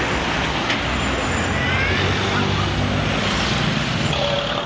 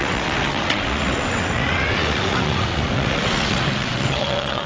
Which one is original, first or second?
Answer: first